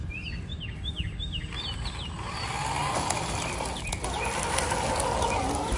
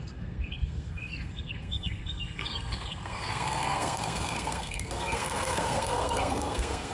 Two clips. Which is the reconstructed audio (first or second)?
second